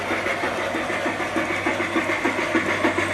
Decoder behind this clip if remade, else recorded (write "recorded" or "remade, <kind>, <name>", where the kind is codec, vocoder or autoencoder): recorded